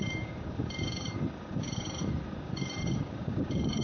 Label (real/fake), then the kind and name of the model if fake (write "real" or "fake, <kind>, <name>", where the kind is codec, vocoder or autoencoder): fake, codec, DAC